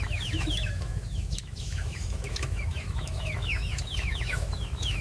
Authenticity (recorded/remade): remade